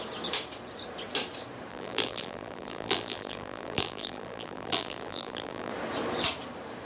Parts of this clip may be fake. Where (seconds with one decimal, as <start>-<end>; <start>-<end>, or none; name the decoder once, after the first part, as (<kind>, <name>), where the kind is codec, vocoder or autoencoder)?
1.7-5.7 (vocoder, BigVGAN v2)